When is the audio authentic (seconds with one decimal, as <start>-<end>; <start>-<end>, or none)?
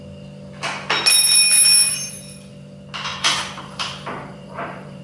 0.0-3.1